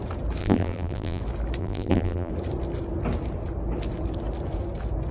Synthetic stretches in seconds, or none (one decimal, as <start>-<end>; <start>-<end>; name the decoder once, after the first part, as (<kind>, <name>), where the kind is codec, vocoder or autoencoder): 0.4-1.2 (vocoder, BigVGAN v2); 1.6-2.3